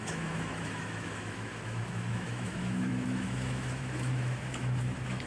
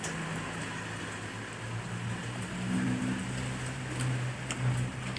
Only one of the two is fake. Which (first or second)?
first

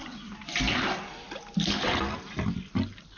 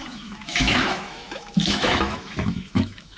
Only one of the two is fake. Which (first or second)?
second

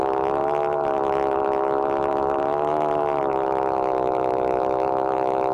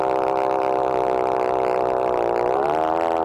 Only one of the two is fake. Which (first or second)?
first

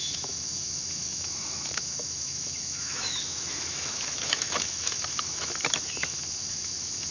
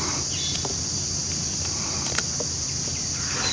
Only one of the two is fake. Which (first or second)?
first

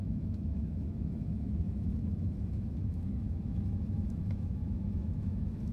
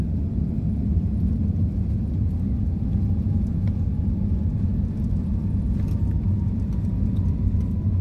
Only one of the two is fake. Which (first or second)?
first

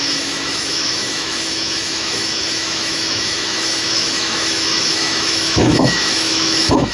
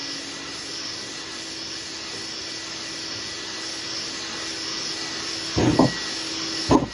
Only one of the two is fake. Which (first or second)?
first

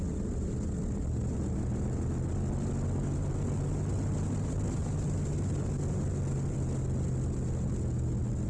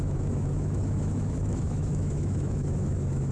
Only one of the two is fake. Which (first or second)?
second